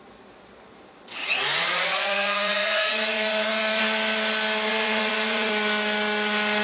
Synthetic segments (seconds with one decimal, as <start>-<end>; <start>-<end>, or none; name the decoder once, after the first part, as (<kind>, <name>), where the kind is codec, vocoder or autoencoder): 1.2-3.8 (vocoder, Vocos); 4.7-5.5